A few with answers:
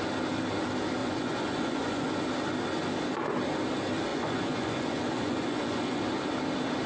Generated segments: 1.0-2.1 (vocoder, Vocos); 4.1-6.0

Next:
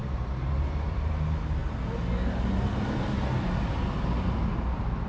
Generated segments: 0.0-1.1 (vocoder, BigVGAN v2)

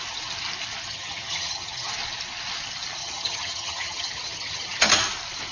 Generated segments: 0.9-1.9 (vocoder, HiFi-GAN); 3.0-4.9

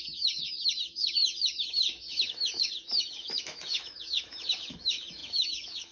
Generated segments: 0.0-5.9 (autoencoder, DAC-VAE)

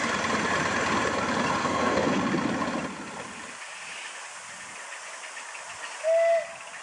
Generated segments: 1.6-2.2 (codec, SNAC)

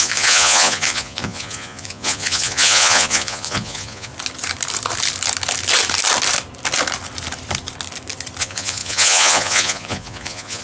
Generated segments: 0.0-4.1 (vocoder, Vocos); 8.4-10.6

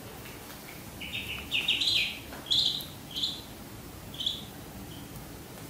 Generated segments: none

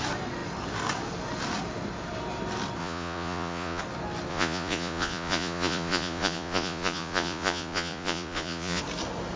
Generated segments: 2.8-3.8 (vocoder, Vocos); 4.3-8.8